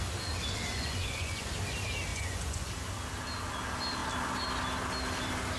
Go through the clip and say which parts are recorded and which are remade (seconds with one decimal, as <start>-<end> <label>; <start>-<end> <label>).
0.0-0.7 recorded; 0.7-1.5 remade; 1.5-2.1 recorded; 2.1-2.7 remade; 2.7-5.6 recorded